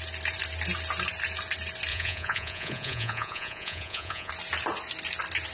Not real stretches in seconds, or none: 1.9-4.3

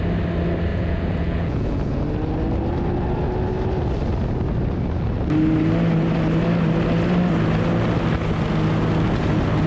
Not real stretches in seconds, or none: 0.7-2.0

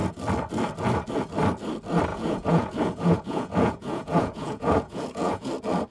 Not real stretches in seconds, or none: 2.1-5.5

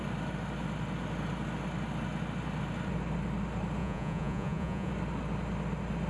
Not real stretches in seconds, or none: 3.8-4.9

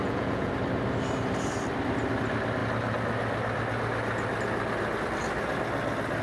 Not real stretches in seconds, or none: 0.0-0.5

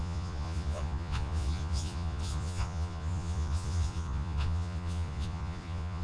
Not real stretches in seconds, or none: 0.0-6.0

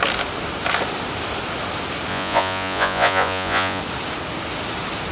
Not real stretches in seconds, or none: 2.1-3.8